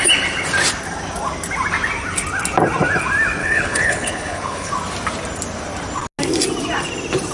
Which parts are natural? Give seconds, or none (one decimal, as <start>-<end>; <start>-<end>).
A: 0.0-3.4; 4.7-7.3